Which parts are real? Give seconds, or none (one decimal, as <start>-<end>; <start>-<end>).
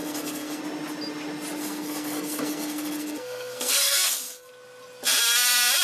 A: 0.6-1.6; 4.5-5.8